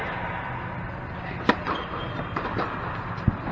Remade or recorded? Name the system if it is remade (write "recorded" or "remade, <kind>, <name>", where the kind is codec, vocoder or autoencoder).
recorded